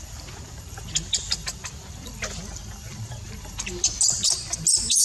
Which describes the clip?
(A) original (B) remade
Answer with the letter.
B